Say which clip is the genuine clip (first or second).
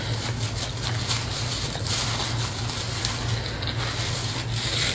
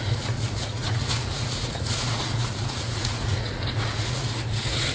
first